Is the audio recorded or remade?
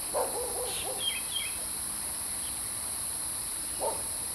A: recorded